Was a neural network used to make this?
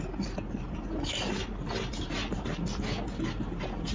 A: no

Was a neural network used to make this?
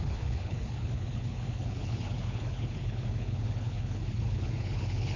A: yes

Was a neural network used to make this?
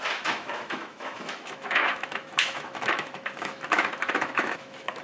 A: yes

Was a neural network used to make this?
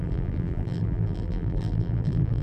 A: yes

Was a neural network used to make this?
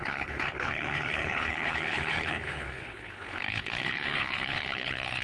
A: yes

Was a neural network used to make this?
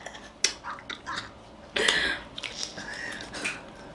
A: no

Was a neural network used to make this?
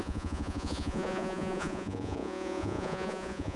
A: yes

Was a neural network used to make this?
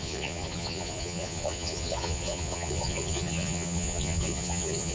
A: yes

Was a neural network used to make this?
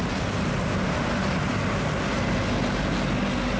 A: no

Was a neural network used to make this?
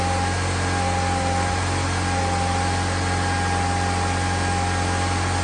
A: no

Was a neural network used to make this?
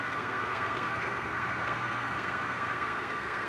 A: yes